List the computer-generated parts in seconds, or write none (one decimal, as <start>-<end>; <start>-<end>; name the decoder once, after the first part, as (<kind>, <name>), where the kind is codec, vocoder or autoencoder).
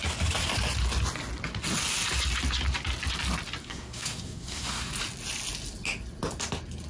3.6-4.9 (codec, SNAC)